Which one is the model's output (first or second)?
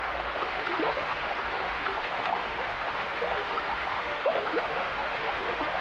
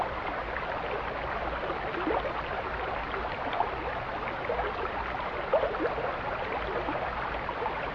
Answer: first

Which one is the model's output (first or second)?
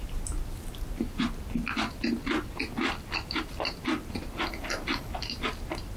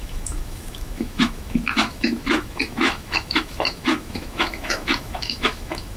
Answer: second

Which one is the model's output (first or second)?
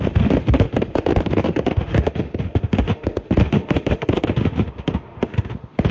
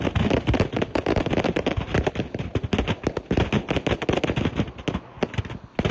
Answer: first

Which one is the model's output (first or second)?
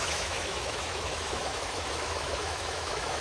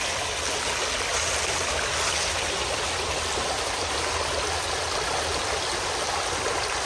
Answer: first